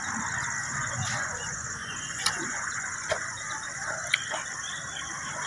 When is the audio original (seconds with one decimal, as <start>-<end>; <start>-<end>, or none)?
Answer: 0.0-0.6; 3.9-5.5